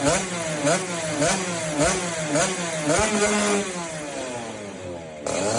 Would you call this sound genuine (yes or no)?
yes